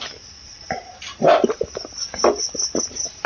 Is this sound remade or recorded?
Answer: recorded